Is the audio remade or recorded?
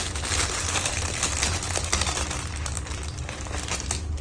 recorded